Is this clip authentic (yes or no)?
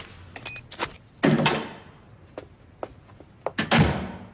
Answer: yes